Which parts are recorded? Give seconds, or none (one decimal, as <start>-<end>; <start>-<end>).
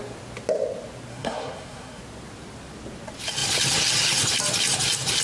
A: 0.0-1.1; 2.0-5.2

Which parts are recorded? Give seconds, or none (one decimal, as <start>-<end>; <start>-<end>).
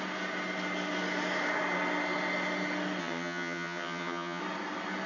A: 0.0-3.0; 4.4-5.1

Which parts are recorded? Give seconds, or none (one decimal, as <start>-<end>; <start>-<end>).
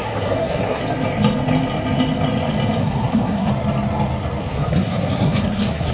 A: 0.8-2.8; 3.5-4.4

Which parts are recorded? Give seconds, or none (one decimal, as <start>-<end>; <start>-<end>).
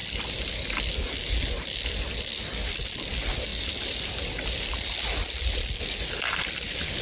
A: 0.0-3.5; 5.1-7.0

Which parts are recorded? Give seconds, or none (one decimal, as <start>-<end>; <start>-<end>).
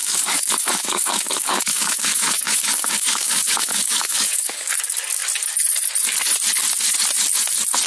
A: 4.7-7.9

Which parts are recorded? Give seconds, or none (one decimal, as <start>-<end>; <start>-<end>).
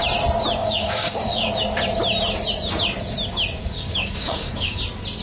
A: 0.0-0.6; 1.5-3.6; 4.8-5.2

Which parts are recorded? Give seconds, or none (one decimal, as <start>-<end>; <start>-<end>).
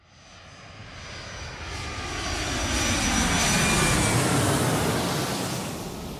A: 0.0-6.2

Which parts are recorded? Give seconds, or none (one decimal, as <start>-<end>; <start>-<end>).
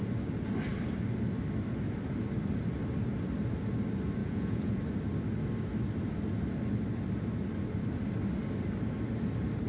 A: 0.0-4.2; 4.8-9.7